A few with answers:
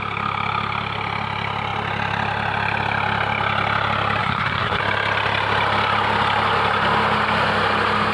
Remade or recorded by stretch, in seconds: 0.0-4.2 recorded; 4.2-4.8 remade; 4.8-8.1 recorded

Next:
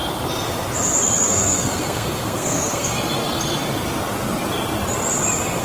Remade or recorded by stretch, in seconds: 0.0-1.3 recorded; 1.3-2.9 remade; 2.9-5.6 recorded